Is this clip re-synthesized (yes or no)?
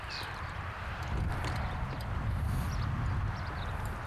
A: no